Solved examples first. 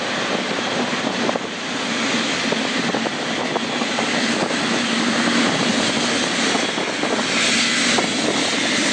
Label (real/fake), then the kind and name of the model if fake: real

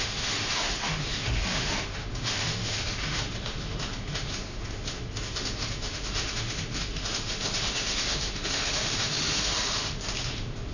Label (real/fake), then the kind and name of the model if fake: fake, autoencoder, DAC-VAE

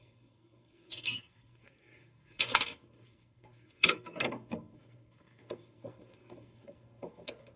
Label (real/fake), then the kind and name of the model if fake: fake, codec, SNAC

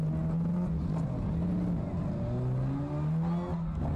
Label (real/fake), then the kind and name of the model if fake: real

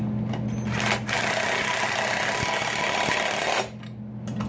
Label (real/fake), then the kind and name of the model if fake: real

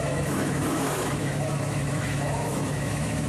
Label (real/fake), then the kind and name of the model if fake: fake, autoencoder, DAC-VAE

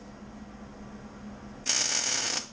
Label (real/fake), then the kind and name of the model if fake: real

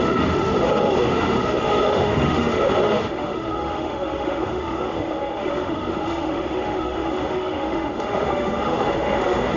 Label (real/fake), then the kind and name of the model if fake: fake, autoencoder, DAC-VAE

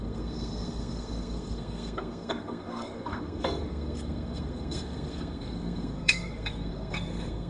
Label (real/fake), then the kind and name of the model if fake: fake, codec, SNAC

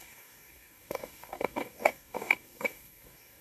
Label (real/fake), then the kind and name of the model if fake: fake, codec, DAC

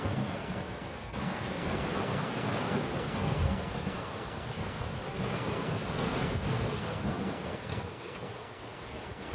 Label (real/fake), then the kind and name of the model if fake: fake, codec, SNAC